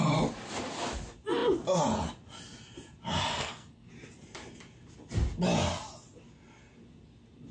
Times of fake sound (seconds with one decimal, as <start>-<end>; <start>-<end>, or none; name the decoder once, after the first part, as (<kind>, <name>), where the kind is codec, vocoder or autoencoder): 3.3-3.9 (codec, SNAC)